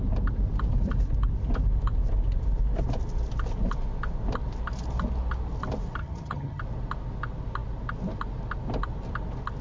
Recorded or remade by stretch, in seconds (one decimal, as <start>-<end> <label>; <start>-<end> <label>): 0.0-6.0 recorded; 6.0-6.6 remade; 6.6-9.6 recorded